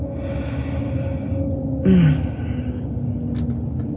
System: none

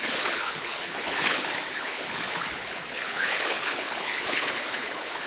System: codec, HILCodec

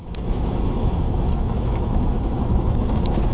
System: autoencoder, DAC-VAE